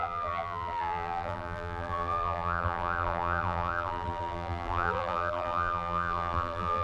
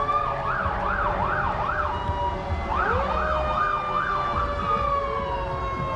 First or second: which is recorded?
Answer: second